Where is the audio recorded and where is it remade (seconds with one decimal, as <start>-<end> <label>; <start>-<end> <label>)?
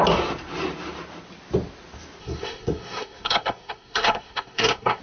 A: 0.0-2.2 recorded; 2.2-5.0 remade